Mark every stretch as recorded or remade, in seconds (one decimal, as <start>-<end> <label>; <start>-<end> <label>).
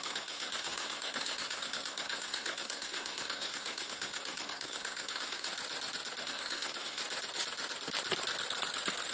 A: 0.0-5.5 remade; 5.5-6.2 recorded; 6.2-7.0 remade; 7.0-9.1 recorded